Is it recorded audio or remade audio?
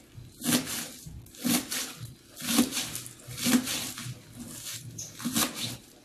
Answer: recorded